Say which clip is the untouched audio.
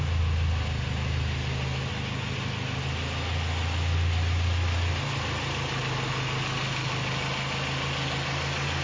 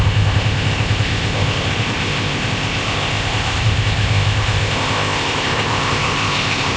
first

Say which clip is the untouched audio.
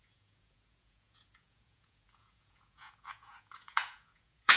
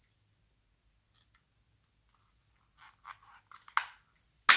second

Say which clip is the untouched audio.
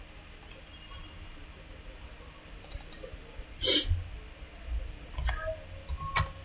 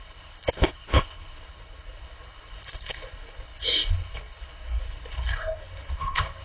first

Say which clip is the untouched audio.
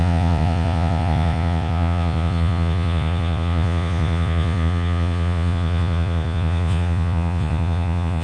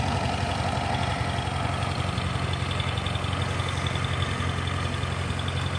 second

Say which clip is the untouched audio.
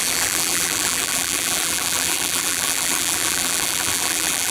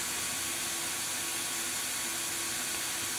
second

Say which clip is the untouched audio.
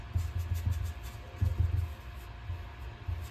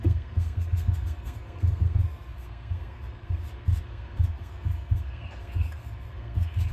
first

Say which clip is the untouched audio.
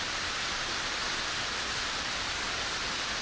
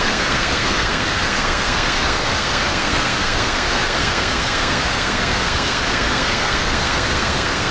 first